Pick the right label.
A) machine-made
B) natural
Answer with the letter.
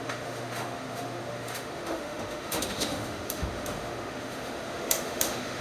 A